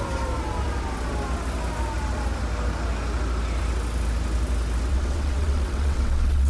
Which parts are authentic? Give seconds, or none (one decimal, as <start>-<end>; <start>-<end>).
0.0-4.9